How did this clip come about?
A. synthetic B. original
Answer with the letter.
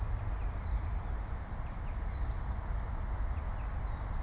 B